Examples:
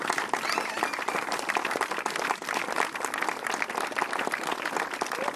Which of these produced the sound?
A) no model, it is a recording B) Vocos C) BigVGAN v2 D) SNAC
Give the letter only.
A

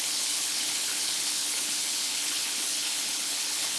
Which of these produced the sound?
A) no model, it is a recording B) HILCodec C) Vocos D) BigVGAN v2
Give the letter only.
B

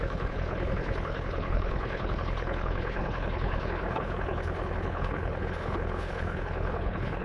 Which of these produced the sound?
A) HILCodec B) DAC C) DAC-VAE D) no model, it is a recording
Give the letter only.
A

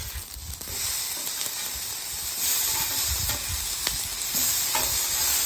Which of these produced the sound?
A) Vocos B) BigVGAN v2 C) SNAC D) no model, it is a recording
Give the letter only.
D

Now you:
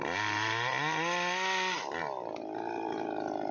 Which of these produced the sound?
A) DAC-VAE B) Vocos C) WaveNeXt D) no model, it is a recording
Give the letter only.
D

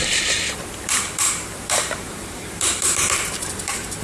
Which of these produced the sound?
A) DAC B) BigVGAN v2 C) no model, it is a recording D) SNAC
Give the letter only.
B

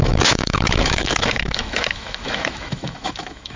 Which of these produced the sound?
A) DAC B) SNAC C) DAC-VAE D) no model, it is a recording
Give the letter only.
C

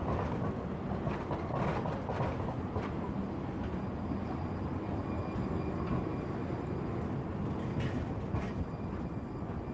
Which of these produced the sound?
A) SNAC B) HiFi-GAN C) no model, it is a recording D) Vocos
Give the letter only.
C